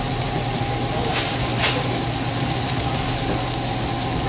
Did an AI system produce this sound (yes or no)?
no